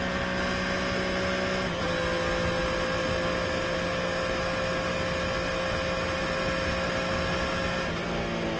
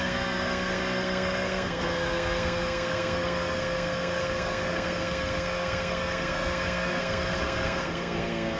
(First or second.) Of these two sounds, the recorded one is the first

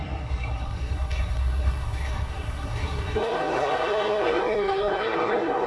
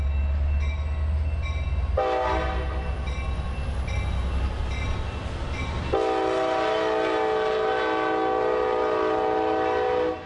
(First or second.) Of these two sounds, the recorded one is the second